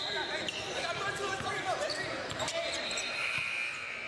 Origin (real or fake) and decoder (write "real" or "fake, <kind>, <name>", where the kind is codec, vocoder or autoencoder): real